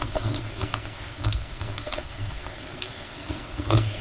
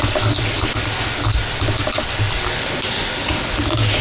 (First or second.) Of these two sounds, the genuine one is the second